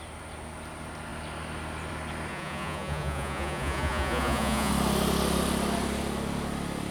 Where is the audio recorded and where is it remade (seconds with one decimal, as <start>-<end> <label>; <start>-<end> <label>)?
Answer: 0.0-2.3 recorded; 2.3-4.7 remade; 4.7-6.9 recorded

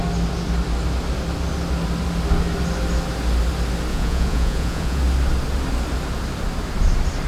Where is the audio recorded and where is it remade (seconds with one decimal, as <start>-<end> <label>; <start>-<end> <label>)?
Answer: 0.0-3.9 recorded; 3.9-5.0 remade; 5.0-7.3 recorded